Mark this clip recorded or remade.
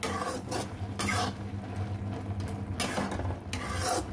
recorded